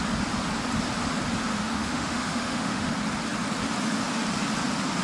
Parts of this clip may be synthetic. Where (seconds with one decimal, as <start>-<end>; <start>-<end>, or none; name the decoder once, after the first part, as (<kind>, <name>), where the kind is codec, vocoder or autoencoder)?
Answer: 1.5-2.9 (autoencoder, DAC-VAE)